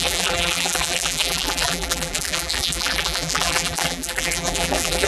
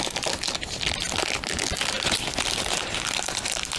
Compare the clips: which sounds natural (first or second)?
second